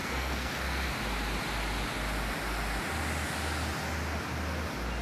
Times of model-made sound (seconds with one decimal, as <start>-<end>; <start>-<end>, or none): 0.0-0.9